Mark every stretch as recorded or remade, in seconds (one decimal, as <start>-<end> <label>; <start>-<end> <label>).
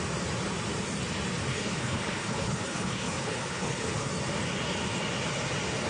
0.0-1.5 recorded; 1.5-4.1 remade; 4.1-5.9 recorded